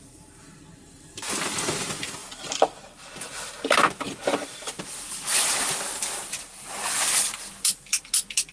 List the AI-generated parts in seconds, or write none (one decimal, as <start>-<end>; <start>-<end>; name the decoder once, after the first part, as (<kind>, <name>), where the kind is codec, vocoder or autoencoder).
2.2-3.0 (vocoder, BigVGAN v2); 4.3-4.8